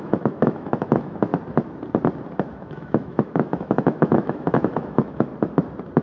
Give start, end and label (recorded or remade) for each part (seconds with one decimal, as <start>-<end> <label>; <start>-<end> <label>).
0.0-1.3 remade; 1.3-2.5 recorded; 2.5-5.3 remade; 5.3-6.0 recorded